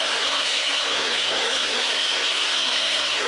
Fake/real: fake